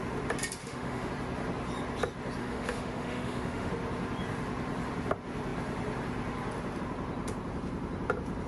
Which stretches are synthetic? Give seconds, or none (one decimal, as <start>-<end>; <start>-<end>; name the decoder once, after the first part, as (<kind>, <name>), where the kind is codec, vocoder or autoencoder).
0.6-1.1 (autoencoder, DAC-VAE); 2.4-3.7